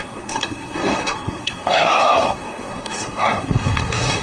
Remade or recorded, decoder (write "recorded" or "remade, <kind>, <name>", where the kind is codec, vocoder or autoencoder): remade, codec, SNAC